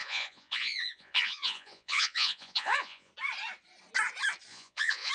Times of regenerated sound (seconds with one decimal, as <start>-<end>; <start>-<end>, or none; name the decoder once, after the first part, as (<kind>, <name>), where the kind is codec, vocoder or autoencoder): 0.0-3.1 (vocoder, Vocos); 4.5-5.1